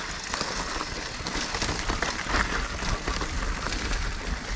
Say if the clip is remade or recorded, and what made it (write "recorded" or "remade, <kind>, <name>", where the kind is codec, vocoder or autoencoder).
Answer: recorded